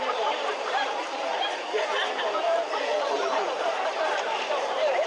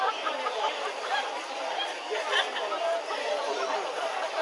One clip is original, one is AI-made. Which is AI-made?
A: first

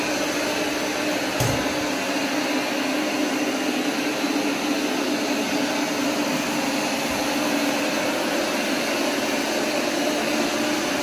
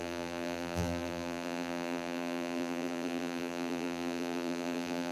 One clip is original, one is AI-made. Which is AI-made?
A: second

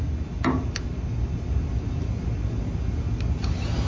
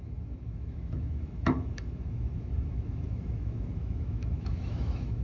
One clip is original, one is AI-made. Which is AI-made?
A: second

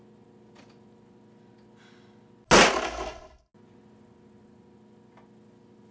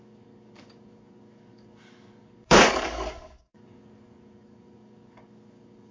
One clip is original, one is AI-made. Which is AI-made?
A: second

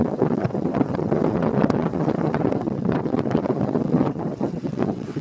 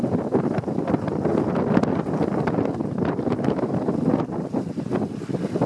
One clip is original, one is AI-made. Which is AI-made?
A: first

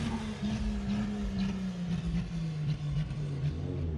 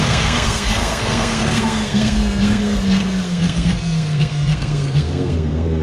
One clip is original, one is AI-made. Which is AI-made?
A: second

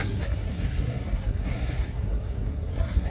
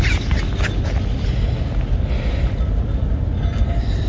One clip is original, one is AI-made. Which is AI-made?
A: first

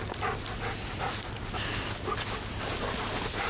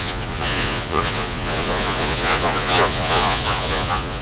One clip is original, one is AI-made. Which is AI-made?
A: second